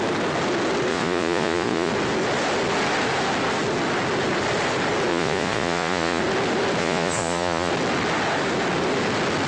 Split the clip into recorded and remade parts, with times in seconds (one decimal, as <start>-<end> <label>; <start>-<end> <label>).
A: 0.0-0.9 recorded; 0.9-1.9 remade; 1.9-5.1 recorded; 5.1-6.2 remade; 6.2-6.8 recorded; 6.8-7.7 remade; 7.7-9.5 recorded